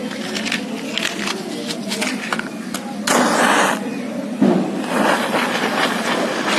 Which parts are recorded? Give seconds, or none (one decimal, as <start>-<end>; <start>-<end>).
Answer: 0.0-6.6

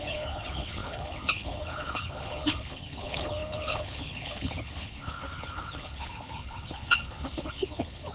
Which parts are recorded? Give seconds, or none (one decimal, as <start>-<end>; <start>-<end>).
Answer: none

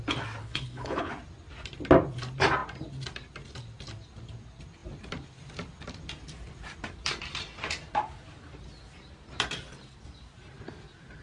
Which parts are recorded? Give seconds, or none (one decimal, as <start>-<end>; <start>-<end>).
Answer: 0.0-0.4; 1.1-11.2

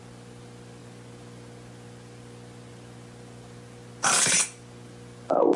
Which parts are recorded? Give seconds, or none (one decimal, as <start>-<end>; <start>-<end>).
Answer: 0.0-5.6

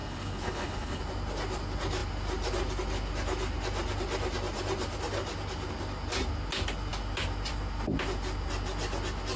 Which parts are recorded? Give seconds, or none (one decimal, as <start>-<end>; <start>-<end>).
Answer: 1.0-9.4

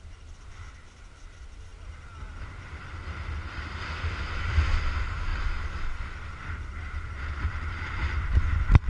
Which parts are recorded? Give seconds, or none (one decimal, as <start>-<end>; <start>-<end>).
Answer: 0.0-8.9

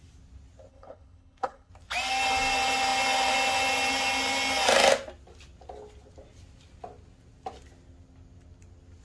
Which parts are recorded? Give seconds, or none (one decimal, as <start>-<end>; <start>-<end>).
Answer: 0.0-0.7; 1.7-9.0